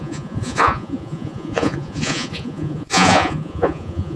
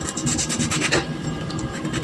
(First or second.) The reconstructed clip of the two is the first